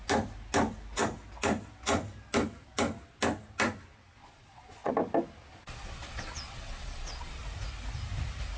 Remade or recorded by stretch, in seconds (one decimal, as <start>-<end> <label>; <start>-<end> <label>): 0.0-4.2 recorded; 4.2-4.9 remade; 4.9-5.5 recorded; 5.5-7.4 remade; 7.4-8.6 recorded